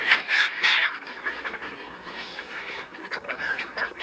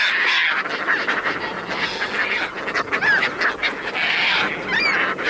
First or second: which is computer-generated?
first